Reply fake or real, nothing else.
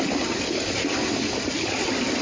real